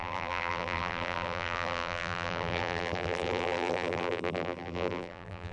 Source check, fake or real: fake